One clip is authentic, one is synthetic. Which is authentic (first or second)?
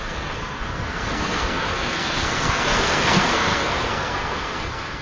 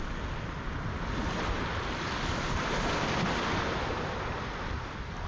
second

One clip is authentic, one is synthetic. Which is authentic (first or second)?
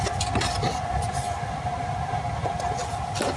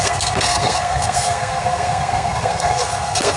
first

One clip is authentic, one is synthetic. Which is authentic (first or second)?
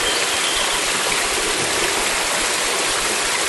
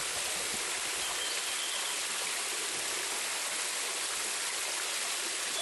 second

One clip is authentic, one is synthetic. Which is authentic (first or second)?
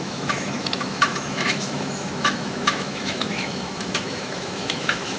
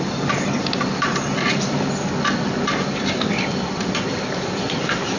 second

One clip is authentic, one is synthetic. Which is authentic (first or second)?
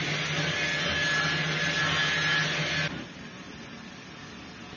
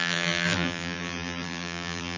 first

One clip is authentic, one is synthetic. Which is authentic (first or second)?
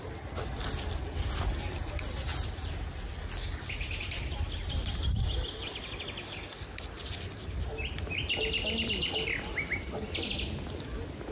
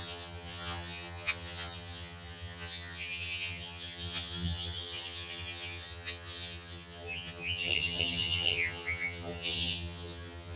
first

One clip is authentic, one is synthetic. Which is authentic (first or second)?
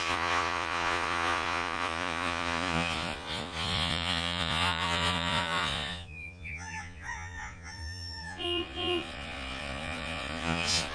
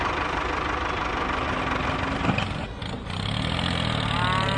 second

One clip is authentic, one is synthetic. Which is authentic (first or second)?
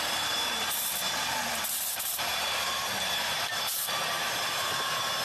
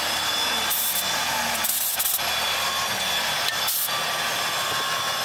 second